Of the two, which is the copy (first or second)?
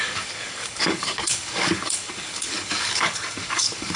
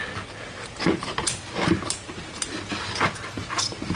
first